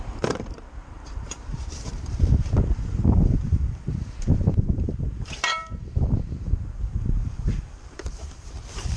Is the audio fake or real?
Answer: fake